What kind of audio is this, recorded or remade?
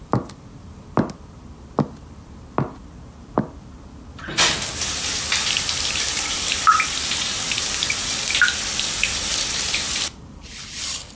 remade